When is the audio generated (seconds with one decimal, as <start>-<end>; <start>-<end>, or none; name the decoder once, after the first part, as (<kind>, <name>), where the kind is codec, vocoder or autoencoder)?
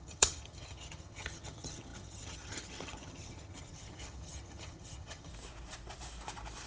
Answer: 0.0-5.3 (vocoder, HiFi-GAN)